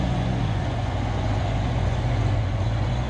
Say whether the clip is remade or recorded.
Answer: remade